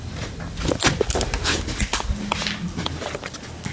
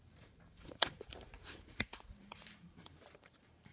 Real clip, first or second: first